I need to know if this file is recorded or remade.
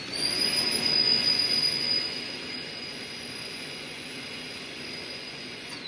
remade